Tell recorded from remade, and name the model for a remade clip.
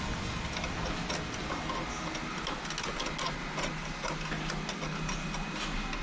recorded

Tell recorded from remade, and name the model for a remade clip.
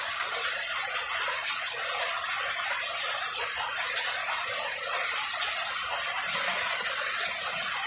recorded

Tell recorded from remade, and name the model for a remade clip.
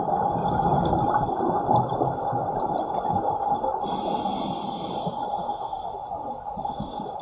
recorded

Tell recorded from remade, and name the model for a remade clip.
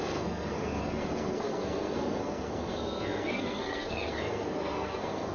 remade, codec, SNAC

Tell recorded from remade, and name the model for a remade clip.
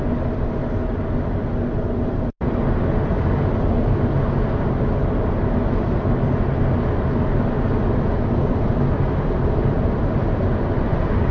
recorded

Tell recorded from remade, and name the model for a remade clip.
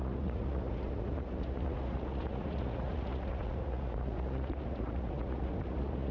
remade, vocoder, Vocos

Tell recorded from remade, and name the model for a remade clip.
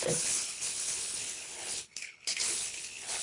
remade, codec, HILCodec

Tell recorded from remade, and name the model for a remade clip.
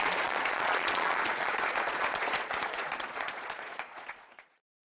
remade, vocoder, Vocos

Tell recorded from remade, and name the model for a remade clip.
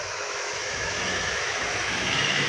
remade, autoencoder, DAC-VAE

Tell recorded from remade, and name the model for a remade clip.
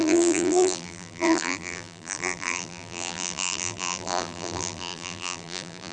remade, vocoder, BigVGAN v2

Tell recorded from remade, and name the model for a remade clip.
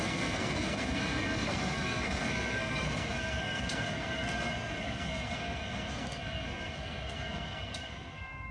remade, codec, SNAC